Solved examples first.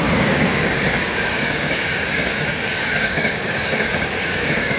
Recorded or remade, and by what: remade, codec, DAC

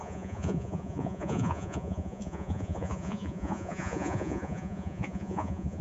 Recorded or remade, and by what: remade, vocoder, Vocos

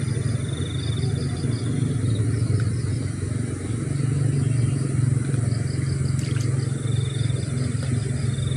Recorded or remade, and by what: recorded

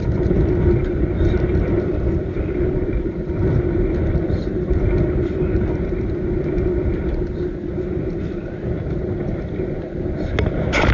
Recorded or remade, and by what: recorded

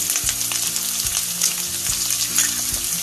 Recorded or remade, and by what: recorded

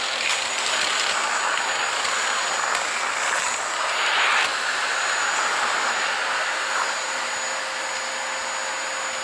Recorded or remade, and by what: recorded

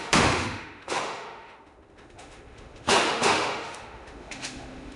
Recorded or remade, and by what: remade, autoencoder, DAC-VAE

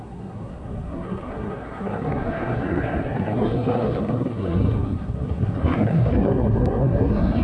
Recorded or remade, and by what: remade, codec, SNAC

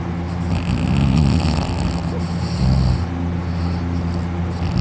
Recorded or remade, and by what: recorded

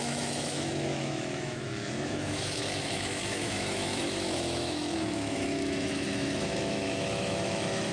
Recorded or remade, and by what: remade, autoencoder, DAC-VAE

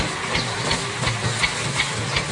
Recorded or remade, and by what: recorded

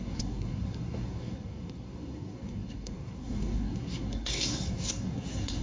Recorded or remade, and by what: remade, codec, SNAC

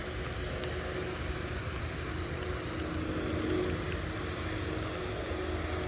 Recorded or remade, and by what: recorded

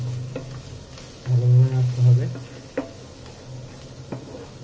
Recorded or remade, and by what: recorded